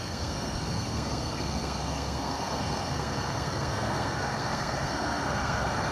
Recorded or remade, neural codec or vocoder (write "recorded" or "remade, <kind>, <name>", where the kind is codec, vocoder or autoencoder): remade, codec, SNAC